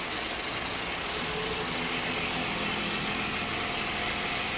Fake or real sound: real